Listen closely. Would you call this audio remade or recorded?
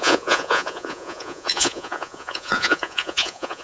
remade